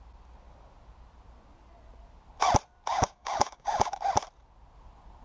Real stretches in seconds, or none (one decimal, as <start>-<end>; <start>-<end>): 0.0-2.9; 4.0-5.2